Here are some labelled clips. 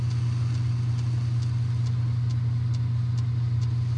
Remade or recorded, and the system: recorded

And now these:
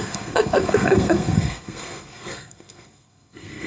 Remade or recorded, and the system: remade, codec, SNAC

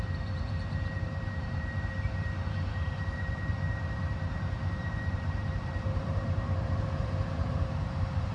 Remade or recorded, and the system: remade, vocoder, BigVGAN v2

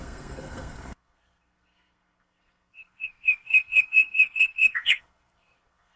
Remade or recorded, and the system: remade, codec, SNAC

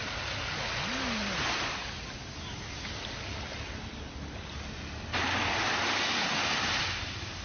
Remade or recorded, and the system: recorded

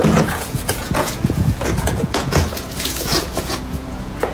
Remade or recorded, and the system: remade, vocoder, Vocos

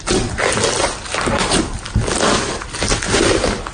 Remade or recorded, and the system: recorded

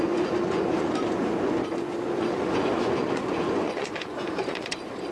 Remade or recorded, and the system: remade, vocoder, Vocos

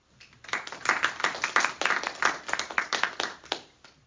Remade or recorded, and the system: recorded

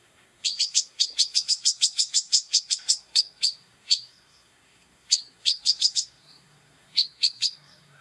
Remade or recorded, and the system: remade, codec, SNAC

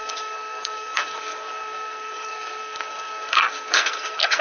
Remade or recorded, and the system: remade, codec, SNAC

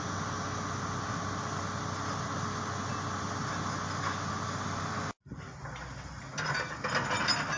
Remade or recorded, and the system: recorded